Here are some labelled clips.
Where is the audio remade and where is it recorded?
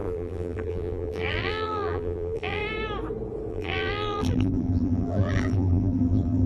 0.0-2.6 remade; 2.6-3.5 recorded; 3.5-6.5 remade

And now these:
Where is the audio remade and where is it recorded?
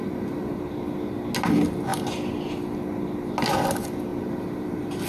0.0-0.6 remade; 0.6-4.1 recorded; 4.1-5.1 remade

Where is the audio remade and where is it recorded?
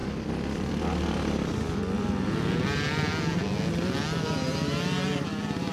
0.0-0.7 remade; 0.7-5.7 recorded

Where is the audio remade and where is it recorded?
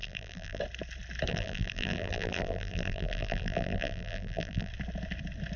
0.0-0.6 remade; 0.6-1.3 recorded; 1.3-4.7 remade; 4.7-5.6 recorded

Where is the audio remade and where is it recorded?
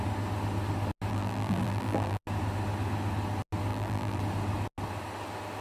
0.0-1.1 recorded; 1.1-2.2 remade; 2.2-3.7 recorded; 3.7-4.2 remade; 4.2-5.6 recorded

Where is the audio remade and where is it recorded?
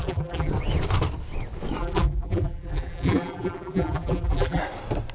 0.0-0.5 remade; 0.5-1.8 recorded; 1.8-4.6 remade; 4.6-5.1 recorded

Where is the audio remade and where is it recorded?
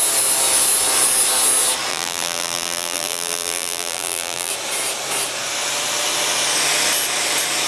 0.0-1.9 recorded; 1.9-4.5 remade; 4.5-7.7 recorded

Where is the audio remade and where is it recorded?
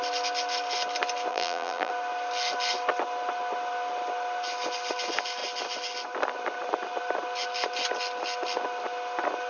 0.0-1.3 recorded; 1.3-1.9 remade; 1.9-9.5 recorded